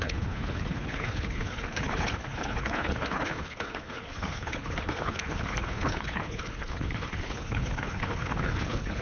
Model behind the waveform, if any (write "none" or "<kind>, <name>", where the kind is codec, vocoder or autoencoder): codec, HILCodec